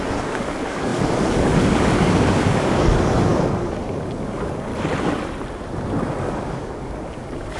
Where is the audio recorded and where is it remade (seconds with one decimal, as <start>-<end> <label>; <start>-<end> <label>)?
0.0-4.7 remade; 4.7-6.2 recorded; 6.2-7.6 remade

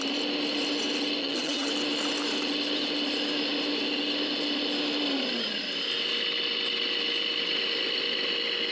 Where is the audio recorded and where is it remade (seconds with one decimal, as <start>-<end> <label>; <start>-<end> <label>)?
0.0-1.2 recorded; 1.2-1.7 remade; 1.7-8.7 recorded